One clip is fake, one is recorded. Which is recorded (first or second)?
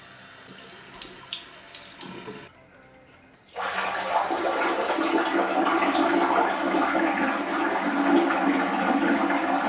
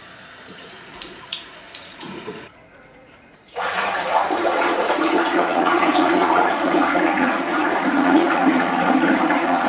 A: first